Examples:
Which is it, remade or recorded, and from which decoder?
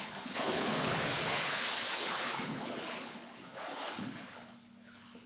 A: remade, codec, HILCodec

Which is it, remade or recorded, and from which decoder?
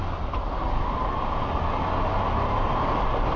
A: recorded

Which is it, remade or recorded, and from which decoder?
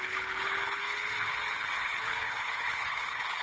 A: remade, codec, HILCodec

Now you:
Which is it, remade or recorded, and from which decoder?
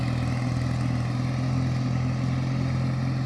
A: recorded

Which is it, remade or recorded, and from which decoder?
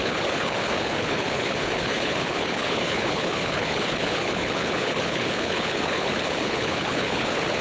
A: remade, codec, HILCodec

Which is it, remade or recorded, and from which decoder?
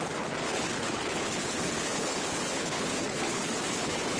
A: remade, codec, HILCodec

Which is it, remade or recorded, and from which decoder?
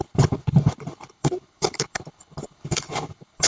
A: remade, codec, HILCodec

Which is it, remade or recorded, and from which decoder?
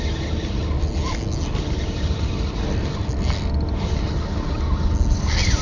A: recorded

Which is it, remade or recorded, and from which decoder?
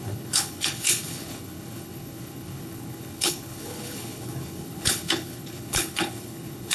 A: remade, codec, HILCodec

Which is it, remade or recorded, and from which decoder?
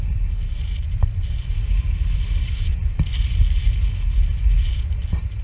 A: recorded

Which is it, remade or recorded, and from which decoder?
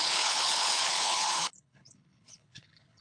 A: remade, codec, HILCodec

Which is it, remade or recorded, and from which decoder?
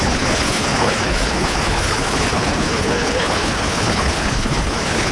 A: remade, codec, HILCodec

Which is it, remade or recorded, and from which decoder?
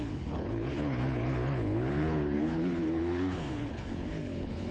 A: remade, codec, HILCodec